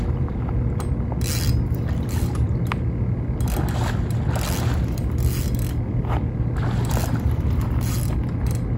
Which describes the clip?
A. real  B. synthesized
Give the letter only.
A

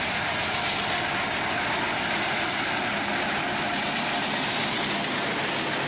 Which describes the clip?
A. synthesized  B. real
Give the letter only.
B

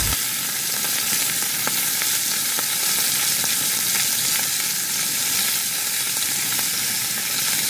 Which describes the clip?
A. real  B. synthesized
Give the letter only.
A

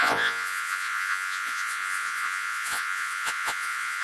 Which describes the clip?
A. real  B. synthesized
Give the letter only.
B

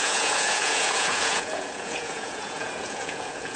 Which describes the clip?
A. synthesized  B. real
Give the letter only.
A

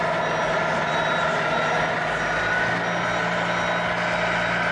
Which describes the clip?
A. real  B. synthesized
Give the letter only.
A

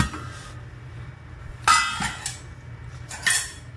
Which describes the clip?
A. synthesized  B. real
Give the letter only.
B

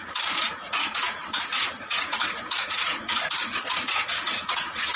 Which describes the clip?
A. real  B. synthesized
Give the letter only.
B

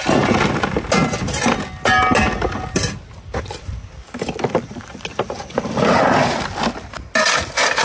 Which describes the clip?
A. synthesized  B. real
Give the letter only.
B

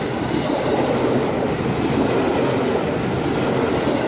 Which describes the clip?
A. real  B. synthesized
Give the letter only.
A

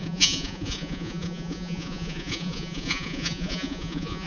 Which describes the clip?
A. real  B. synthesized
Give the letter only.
B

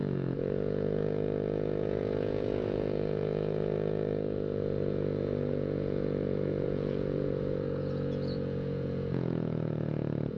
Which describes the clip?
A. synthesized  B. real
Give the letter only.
A